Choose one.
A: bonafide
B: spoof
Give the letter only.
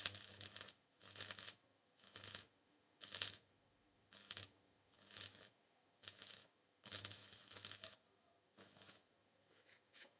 B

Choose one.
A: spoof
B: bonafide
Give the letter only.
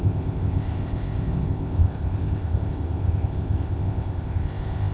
A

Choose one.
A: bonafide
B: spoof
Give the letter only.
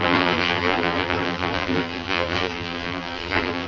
B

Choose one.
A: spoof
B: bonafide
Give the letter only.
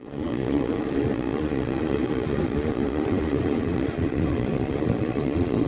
A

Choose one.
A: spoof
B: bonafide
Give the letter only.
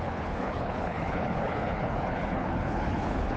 A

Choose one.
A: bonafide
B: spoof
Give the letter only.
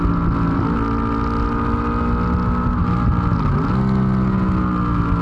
A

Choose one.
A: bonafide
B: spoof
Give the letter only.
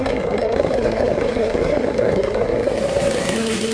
B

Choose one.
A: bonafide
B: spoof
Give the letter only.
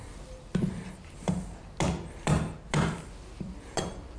A